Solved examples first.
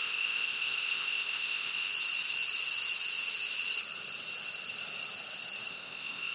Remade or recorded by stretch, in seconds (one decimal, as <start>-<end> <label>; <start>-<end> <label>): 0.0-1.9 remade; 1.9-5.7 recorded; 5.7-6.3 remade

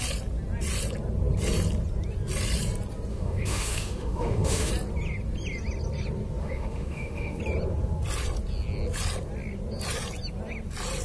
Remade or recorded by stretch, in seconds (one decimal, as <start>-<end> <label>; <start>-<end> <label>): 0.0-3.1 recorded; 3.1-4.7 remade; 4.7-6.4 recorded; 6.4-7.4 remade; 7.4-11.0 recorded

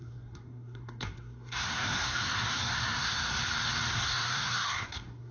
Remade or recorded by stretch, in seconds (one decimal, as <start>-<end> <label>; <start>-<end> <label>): 0.0-3.4 remade; 3.4-3.9 recorded; 3.9-5.3 remade

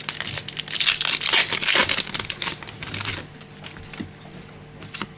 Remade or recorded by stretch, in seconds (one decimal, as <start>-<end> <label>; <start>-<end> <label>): 0.0-5.2 recorded

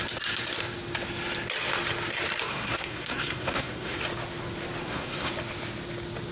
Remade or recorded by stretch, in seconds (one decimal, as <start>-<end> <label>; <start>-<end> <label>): 0.0-2.5 recorded; 2.5-4.0 remade; 4.0-4.8 recorded; 4.8-5.3 remade; 5.3-6.3 recorded